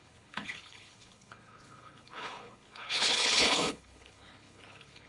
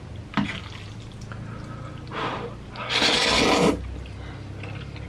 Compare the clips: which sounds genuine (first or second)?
second